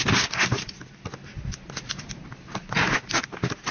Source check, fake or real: real